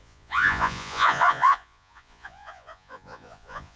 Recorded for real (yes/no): no